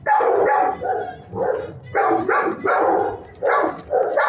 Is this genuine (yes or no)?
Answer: no